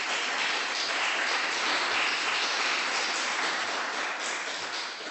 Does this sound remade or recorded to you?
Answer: recorded